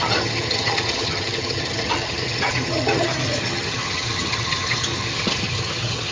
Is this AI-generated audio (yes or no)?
yes